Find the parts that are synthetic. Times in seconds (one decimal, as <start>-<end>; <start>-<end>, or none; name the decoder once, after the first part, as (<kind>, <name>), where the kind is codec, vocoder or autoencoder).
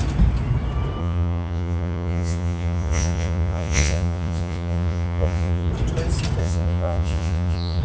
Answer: 1.0-5.7 (vocoder, Vocos); 6.4-7.8